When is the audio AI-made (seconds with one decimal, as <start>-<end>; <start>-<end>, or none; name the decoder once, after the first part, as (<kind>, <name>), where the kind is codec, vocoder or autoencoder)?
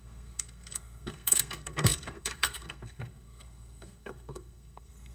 0.0-5.1 (codec, SNAC)